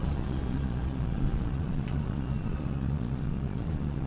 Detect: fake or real fake